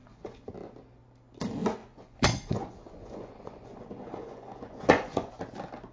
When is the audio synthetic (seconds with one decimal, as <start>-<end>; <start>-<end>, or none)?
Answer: 0.0-0.5; 1.8-5.3